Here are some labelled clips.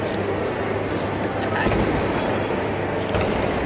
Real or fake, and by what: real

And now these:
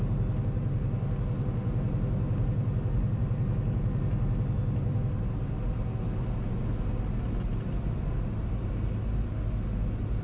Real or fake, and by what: real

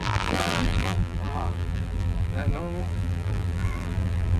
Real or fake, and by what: fake, vocoder, BigVGAN v2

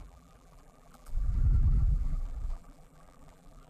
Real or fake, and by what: fake, vocoder, BigVGAN v2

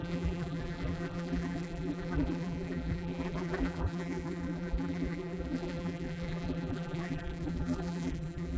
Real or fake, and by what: fake, vocoder, BigVGAN v2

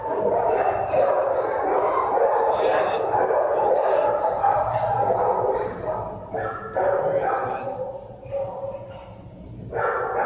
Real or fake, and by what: real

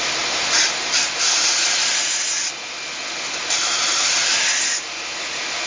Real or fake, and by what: real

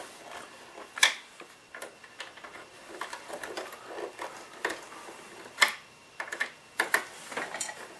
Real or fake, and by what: real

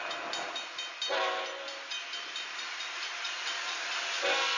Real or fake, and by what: fake, vocoder, BigVGAN v2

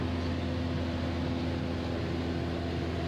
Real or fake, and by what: real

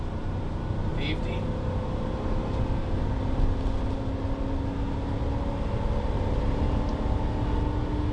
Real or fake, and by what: real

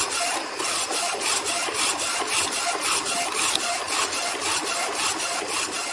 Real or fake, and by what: real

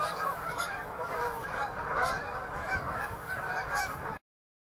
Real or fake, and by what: fake, codec, DAC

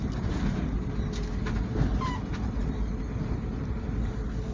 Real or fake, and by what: real